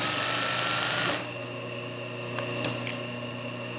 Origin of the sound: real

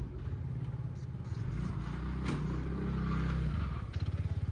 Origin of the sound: real